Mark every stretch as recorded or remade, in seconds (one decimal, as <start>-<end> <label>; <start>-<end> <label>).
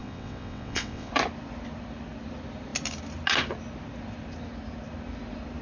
0.0-1.1 remade; 1.1-5.6 recorded